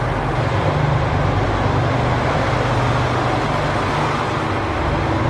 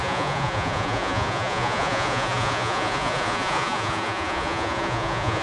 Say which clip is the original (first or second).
first